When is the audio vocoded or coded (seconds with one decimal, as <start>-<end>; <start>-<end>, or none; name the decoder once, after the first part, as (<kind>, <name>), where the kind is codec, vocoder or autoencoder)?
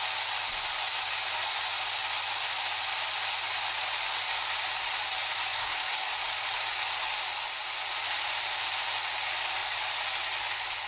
5.5-6.1 (codec, DAC)